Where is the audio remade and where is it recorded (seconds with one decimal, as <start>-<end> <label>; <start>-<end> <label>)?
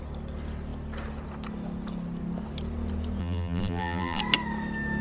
0.0-3.2 recorded; 3.2-4.2 remade; 4.2-5.0 recorded